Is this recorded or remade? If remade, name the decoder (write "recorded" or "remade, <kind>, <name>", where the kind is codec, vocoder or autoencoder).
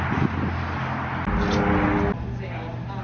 recorded